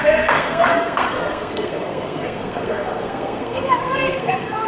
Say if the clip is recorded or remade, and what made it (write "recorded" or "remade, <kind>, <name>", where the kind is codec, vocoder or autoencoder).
remade, codec, SNAC